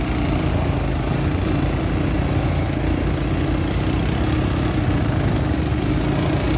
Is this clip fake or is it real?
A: real